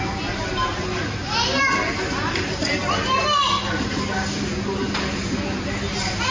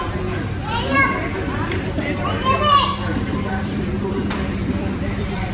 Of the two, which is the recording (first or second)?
first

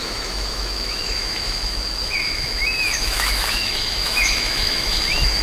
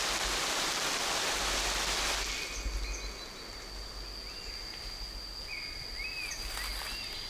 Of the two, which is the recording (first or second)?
second